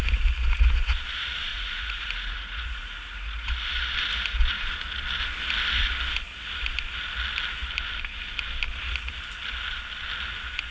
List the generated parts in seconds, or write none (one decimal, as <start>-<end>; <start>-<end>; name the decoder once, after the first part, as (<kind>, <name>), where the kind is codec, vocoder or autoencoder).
1.5-3.5 (vocoder, Vocos)